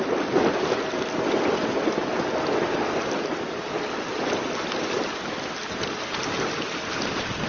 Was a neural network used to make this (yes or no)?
no